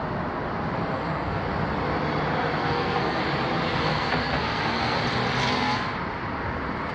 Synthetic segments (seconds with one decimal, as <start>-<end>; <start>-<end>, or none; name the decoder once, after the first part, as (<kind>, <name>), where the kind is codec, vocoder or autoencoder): 0.9-1.4 (codec, SNAC); 2.6-3.2; 3.7-5.0; 5.4-5.9